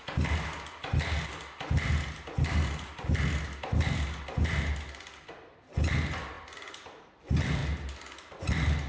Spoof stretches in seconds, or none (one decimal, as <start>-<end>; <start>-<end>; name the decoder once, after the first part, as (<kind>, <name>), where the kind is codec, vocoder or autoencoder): none